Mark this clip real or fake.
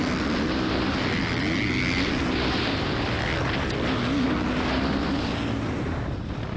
real